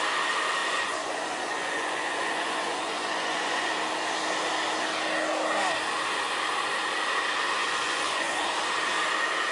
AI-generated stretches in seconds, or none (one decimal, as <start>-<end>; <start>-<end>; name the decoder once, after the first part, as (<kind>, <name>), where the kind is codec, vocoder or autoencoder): 0.6-3.7 (vocoder, Vocos); 7.6-8.5